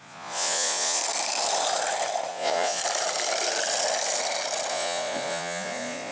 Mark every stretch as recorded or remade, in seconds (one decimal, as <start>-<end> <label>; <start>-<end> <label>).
0.0-1.0 remade; 1.0-2.3 recorded; 2.3-2.8 remade; 2.8-4.7 recorded; 4.7-6.1 remade